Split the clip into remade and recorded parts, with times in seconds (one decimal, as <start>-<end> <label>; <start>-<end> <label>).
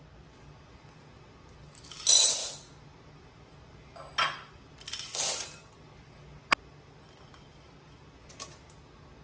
0.0-9.2 recorded